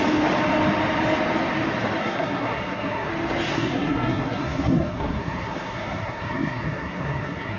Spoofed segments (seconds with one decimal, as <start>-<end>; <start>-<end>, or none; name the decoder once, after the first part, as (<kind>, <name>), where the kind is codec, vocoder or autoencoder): 2.0-3.1 (codec, SNAC); 3.5-7.6